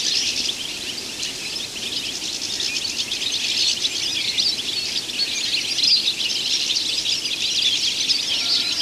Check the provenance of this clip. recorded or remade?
recorded